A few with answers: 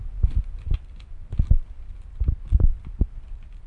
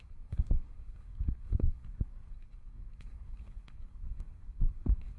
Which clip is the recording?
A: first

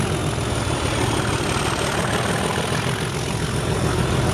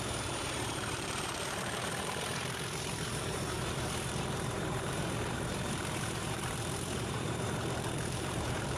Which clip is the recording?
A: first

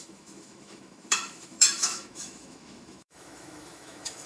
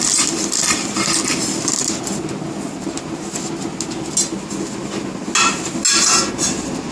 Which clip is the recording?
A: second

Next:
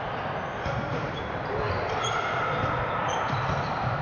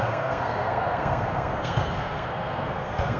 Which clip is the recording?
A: first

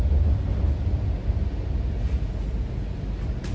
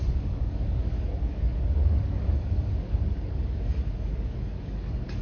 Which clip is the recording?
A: first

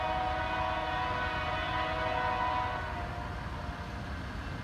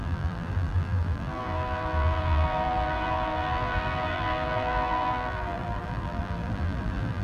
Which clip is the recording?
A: first